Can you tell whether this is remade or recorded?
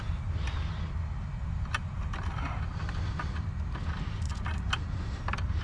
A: recorded